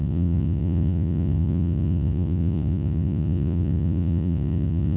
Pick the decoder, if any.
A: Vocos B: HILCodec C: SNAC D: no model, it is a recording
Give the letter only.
A